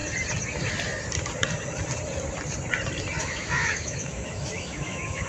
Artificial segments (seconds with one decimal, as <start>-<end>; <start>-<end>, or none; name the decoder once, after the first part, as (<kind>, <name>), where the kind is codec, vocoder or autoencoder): 3.2-5.3 (autoencoder, DAC-VAE)